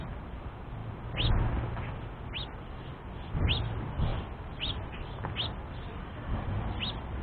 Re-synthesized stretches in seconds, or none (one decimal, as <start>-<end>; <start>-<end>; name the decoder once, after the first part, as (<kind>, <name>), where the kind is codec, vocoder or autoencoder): 4.1-7.2 (vocoder, BigVGAN v2)